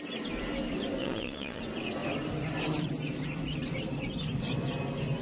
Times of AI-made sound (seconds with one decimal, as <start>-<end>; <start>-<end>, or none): 1.0-1.6